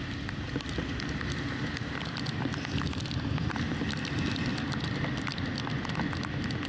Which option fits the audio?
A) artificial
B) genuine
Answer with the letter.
B